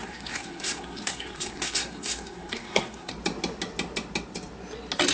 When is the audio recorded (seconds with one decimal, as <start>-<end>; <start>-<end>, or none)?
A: 3.1-5.1